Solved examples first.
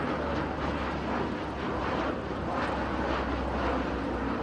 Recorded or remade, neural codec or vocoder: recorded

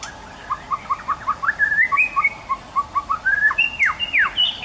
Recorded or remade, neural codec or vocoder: recorded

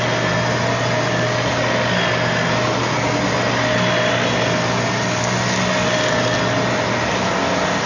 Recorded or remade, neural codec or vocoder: recorded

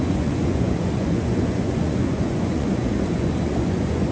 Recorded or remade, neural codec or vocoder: remade, vocoder, Vocos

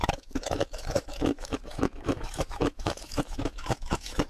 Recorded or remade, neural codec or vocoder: remade, autoencoder, DAC-VAE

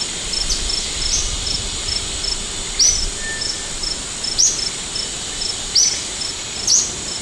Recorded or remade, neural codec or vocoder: recorded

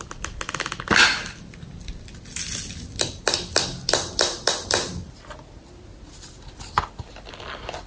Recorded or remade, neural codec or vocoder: recorded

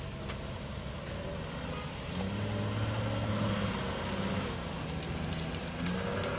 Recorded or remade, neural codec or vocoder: recorded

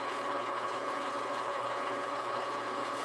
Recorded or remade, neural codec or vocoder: remade, codec, HILCodec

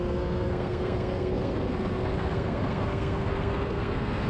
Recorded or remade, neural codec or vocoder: remade, codec, SNAC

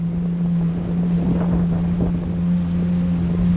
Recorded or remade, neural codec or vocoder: recorded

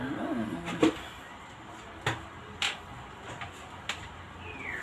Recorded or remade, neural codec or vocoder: recorded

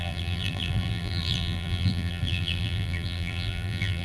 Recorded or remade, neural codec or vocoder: remade, vocoder, BigVGAN v2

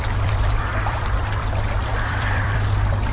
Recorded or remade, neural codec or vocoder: remade, vocoder, BigVGAN v2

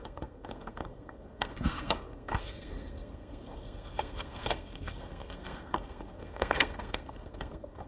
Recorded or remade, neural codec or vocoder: remade, codec, SNAC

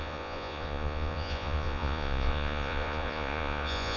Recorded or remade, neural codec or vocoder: remade, vocoder, Vocos